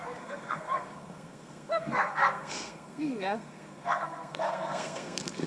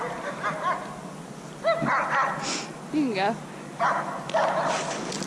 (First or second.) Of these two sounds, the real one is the second